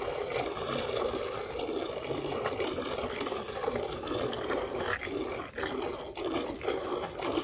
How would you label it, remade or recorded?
recorded